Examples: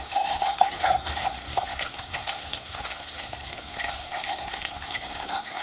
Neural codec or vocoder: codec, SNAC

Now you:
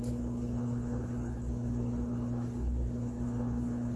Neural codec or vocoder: codec, HILCodec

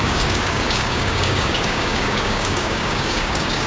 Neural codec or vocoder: codec, DAC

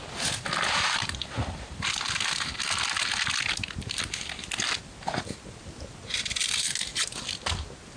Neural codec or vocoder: none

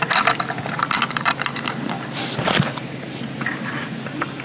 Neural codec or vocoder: none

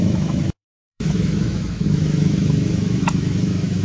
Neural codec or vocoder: autoencoder, DAC-VAE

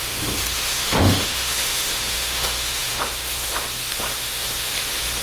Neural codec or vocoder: autoencoder, DAC-VAE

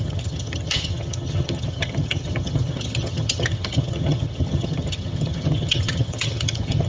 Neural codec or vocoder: vocoder, HiFi-GAN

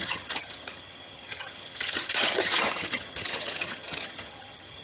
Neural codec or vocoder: vocoder, HiFi-GAN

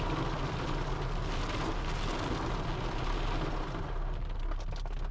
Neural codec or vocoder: none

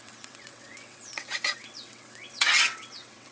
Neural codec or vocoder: vocoder, WaveNeXt